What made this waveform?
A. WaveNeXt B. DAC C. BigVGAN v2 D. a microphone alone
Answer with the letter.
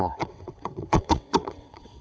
A